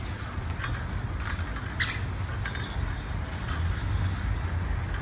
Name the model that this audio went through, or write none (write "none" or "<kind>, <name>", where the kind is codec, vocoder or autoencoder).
none